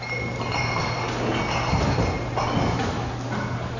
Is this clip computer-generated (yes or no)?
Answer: no